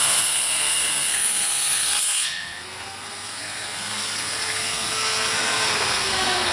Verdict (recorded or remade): remade